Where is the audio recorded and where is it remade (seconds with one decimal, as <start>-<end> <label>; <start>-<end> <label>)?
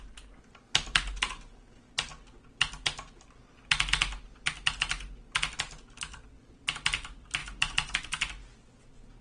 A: 0.0-7.4 recorded; 7.4-8.2 remade; 8.2-9.2 recorded